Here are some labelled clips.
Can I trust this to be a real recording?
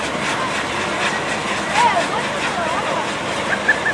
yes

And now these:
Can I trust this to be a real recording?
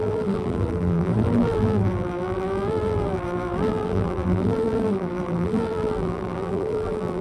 no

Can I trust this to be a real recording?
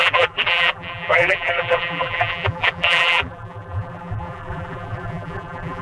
no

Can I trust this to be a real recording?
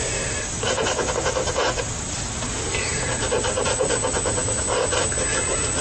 no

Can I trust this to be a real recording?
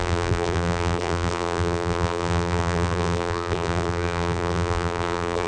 no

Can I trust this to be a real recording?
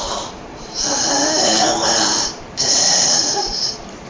no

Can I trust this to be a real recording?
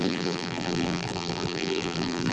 no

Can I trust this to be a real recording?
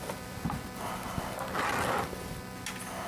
yes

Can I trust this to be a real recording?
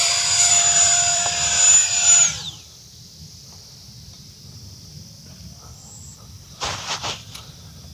no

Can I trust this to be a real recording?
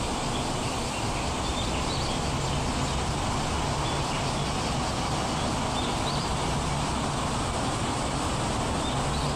yes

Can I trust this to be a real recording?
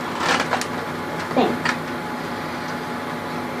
yes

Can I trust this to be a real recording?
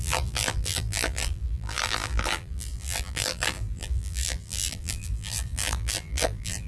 no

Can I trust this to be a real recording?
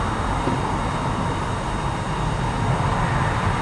yes